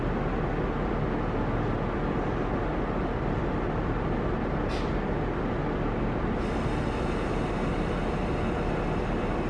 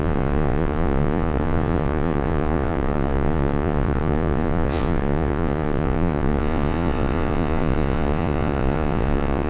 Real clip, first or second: first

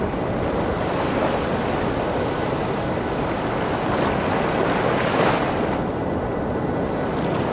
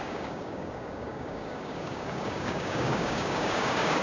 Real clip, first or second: first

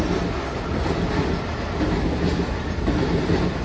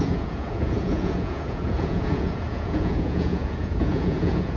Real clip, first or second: first